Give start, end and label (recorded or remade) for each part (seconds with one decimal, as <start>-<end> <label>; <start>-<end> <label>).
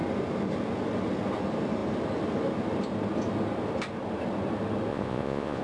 0.0-4.9 recorded; 4.9-5.6 remade